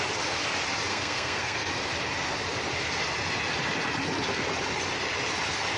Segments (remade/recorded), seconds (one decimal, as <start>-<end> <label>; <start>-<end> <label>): 0.0-0.9 recorded; 0.9-1.7 remade; 1.7-5.8 recorded